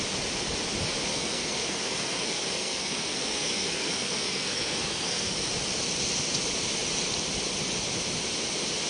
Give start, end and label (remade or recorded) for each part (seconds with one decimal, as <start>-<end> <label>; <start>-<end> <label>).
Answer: 0.0-1.1 recorded; 1.1-5.5 remade; 5.5-8.9 recorded